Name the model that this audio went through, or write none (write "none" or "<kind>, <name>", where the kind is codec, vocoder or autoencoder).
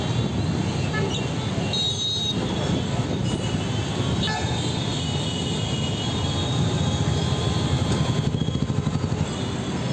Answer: none